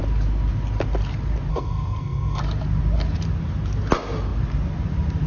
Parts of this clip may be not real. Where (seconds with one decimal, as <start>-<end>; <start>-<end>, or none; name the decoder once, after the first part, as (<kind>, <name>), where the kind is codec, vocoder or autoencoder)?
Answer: 1.5-2.4 (codec, SNAC)